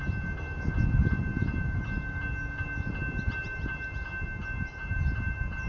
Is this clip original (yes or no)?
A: yes